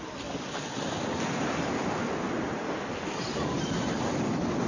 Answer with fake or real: real